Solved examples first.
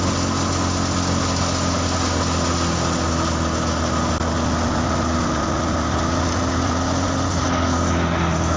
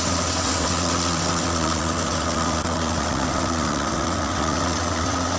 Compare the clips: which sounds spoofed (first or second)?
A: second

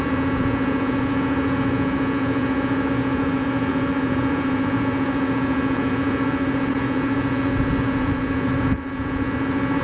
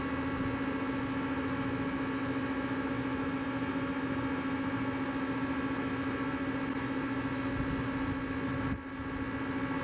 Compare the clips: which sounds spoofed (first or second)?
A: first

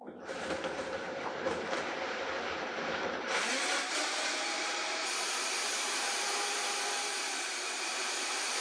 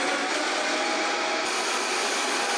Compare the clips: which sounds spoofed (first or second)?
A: first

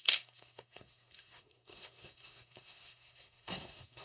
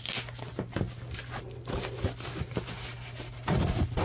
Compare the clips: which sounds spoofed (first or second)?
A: first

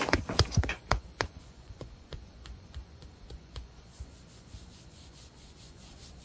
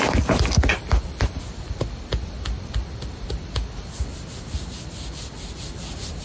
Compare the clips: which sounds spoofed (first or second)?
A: first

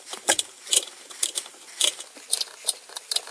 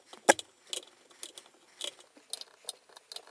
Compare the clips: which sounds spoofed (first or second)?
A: first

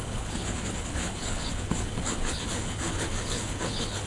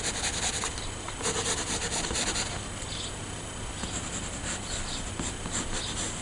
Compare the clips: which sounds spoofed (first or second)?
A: first